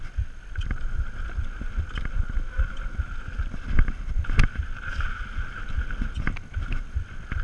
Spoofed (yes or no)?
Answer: no